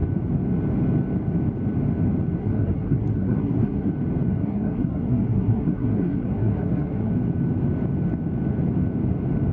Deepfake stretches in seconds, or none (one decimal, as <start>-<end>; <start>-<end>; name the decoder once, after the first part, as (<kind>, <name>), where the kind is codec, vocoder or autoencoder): 2.4-3.9 (codec, SNAC); 4.3-7.1